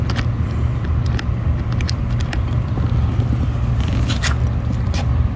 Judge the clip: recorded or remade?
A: recorded